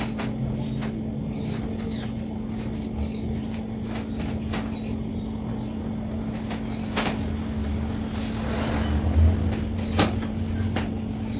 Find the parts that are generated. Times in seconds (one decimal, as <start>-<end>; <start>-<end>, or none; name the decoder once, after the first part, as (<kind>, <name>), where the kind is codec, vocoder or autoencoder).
none